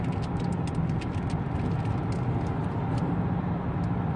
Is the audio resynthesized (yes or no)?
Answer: no